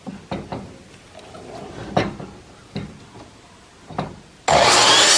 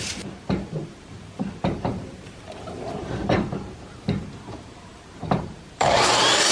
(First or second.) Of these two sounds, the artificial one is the second